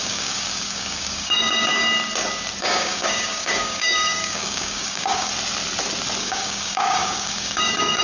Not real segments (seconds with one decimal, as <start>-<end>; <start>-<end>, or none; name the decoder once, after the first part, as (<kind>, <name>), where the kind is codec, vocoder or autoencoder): 0.0-1.8 (codec, DAC); 2.6-5.3; 6.2-8.0

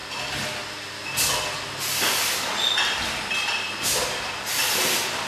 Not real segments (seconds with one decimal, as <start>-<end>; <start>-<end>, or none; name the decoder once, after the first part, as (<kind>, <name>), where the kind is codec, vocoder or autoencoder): none

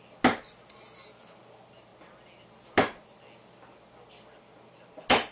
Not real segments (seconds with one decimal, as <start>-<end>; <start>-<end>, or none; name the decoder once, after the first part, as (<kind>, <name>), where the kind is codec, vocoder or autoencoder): none

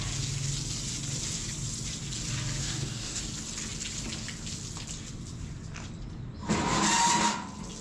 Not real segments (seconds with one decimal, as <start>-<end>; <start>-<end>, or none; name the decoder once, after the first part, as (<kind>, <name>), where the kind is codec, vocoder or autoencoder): 2.6-3.2 (codec, DAC)

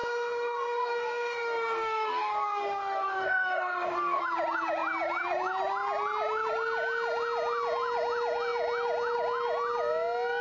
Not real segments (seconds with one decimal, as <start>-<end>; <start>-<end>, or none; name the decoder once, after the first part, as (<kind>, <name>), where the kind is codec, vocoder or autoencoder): 0.0-4.2 (codec, DAC)

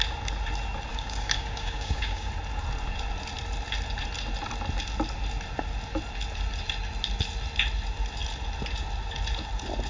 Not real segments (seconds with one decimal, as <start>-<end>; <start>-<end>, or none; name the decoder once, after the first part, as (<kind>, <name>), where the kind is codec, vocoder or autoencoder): 0.9-2.3 (codec, DAC)